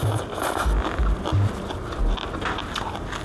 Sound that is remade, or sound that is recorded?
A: recorded